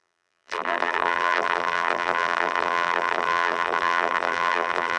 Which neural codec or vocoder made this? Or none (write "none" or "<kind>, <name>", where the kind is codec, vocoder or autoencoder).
vocoder, BigVGAN v2